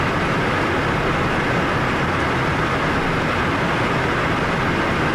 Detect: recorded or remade recorded